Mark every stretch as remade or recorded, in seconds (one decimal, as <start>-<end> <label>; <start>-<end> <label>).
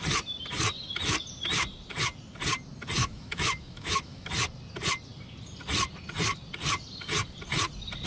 0.0-3.0 recorded; 3.0-4.3 remade; 4.3-8.1 recorded